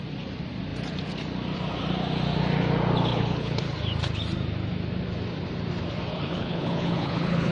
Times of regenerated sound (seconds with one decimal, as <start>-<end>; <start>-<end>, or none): 3.1-3.6; 6.1-7.5